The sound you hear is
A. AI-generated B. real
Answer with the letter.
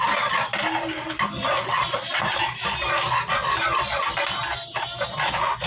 B